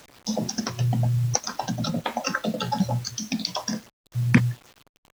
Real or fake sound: real